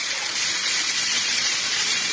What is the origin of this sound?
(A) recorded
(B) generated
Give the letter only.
B